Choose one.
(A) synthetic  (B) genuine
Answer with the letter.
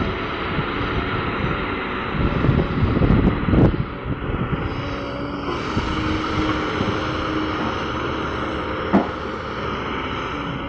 B